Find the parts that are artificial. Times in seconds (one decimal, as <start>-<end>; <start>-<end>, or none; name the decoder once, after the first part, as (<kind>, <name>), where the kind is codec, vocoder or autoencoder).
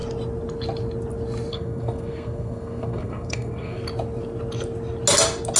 1.5-3.8 (codec, SNAC)